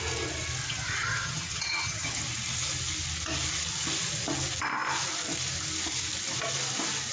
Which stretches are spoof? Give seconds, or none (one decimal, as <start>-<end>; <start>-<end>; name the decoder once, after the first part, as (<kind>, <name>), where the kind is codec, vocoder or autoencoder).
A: 0.6-2.2 (vocoder, HiFi-GAN)